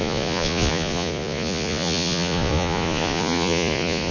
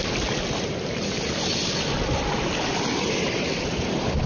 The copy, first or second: first